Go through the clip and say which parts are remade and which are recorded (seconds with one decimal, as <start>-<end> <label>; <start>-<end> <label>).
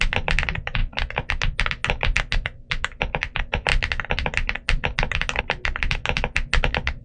0.0-7.0 recorded